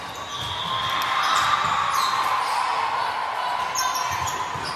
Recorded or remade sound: recorded